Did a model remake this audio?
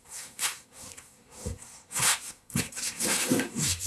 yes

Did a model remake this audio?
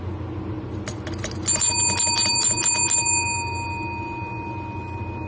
no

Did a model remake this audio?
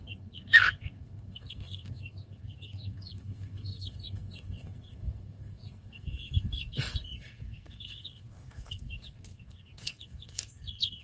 yes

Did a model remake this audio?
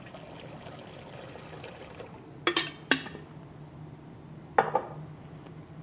no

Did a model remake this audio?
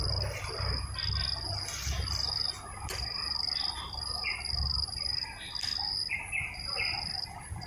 no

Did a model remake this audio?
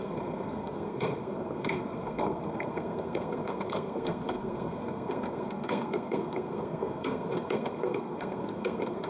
yes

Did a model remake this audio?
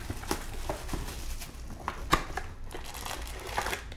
no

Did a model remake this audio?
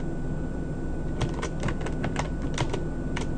no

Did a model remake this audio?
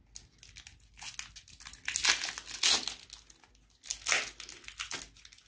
no